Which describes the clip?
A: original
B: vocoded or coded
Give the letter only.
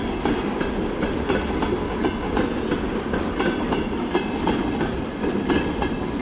A